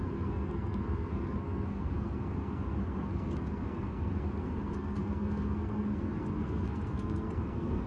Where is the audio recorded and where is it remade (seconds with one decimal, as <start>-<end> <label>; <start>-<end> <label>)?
0.0-7.9 remade